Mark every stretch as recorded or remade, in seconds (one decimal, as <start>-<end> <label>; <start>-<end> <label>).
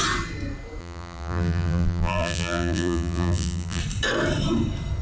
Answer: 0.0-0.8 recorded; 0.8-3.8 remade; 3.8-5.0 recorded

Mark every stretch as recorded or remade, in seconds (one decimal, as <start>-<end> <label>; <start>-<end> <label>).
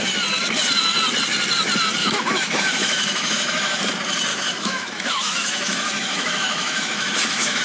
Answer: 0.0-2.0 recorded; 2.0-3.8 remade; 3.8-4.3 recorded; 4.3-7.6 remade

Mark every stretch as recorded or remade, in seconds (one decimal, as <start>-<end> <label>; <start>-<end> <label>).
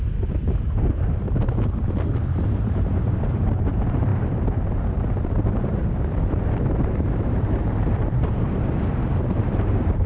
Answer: 0.0-10.1 remade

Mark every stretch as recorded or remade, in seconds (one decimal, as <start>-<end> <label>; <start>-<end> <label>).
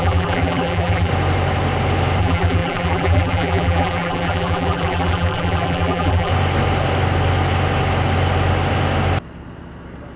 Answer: 0.0-1.1 remade; 1.1-2.2 recorded; 2.2-6.3 remade; 6.3-10.2 recorded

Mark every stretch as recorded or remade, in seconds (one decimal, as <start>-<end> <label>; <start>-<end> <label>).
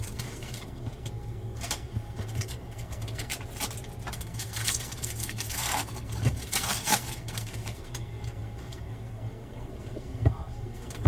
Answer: 0.0-3.3 remade; 3.3-4.1 recorded; 4.1-11.1 remade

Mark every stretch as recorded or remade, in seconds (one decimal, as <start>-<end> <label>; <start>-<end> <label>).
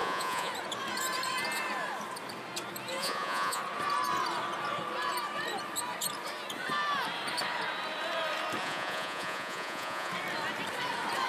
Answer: 0.0-0.5 remade; 0.5-3.0 recorded; 3.0-3.6 remade; 3.6-8.6 recorded; 8.6-10.1 remade; 10.1-11.3 recorded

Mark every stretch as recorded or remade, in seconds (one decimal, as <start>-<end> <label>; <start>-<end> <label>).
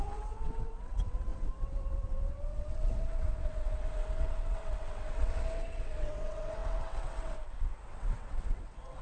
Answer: 0.0-9.0 remade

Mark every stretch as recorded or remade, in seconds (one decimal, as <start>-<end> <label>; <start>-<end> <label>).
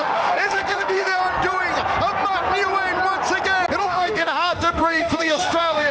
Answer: 0.0-1.2 remade; 1.2-3.8 recorded; 3.8-5.9 remade